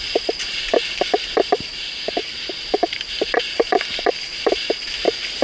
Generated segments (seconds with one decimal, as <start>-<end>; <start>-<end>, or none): 2.8-4.1